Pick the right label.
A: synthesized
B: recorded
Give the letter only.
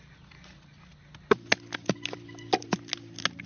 B